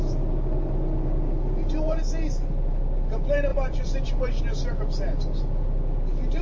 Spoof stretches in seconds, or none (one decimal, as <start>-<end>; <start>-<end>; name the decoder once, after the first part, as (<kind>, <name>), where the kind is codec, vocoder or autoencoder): 3.5-4.4 (vocoder, BigVGAN v2)